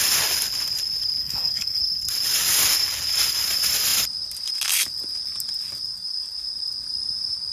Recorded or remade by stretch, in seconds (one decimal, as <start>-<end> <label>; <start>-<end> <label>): 0.0-1.2 recorded; 1.2-1.8 remade; 1.8-7.5 recorded